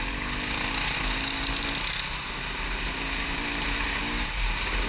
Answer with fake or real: real